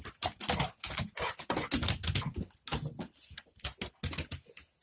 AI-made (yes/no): no